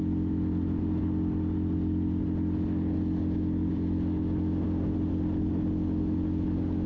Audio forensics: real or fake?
real